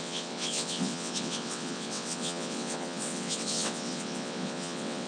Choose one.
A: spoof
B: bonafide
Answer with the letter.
A